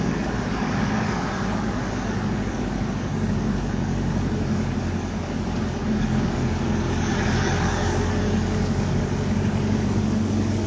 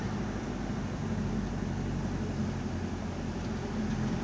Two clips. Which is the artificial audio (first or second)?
first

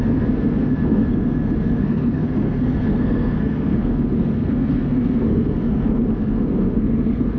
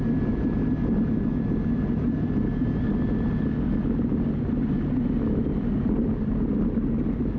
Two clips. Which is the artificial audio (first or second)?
first